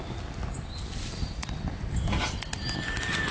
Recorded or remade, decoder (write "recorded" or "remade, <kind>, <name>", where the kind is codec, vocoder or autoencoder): recorded